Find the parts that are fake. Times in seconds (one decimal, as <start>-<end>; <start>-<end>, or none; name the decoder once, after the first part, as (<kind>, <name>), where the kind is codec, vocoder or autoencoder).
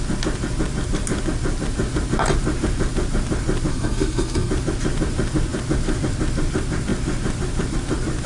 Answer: 3.7-4.5 (codec, SNAC)